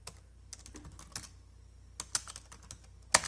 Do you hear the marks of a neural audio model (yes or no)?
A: no